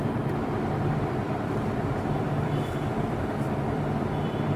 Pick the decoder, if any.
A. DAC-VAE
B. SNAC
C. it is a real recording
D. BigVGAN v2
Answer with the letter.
D